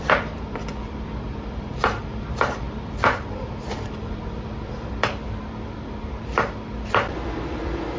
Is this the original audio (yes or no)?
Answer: no